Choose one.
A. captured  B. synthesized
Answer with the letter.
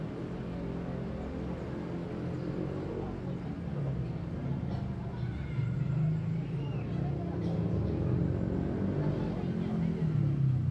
A